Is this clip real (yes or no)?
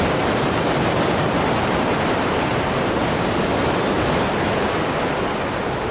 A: yes